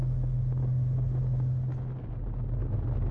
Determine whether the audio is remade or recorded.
recorded